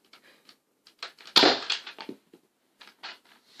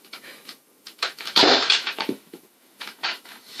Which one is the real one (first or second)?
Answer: first